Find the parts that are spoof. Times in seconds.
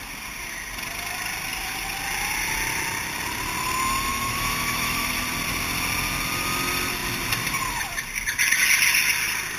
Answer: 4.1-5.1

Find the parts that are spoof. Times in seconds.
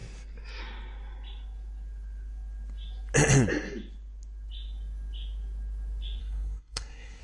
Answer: 6.2-7.2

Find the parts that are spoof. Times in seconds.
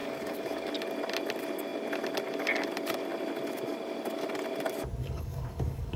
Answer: 0.0-0.7; 5.0-6.0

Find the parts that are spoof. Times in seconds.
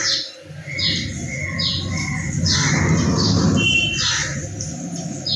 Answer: none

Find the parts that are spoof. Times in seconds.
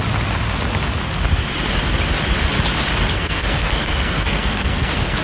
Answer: 3.1-5.2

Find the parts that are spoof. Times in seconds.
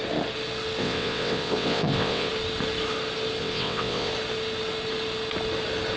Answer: 0.8-2.3; 3.4-4.1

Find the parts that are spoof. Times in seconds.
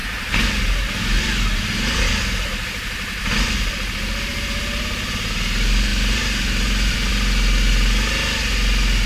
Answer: 0.0-1.2; 4.3-4.8; 5.9-7.1